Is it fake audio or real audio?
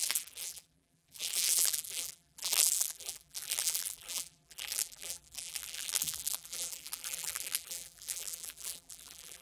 fake